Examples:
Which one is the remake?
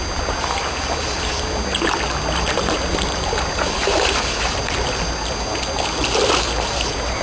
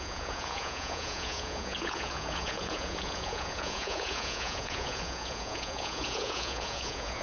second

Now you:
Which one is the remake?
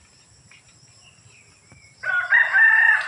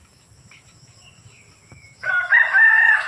second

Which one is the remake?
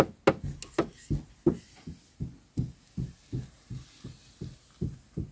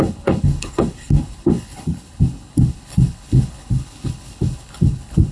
second